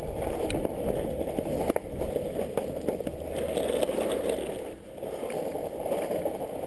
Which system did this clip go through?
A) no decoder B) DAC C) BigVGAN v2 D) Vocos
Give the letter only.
A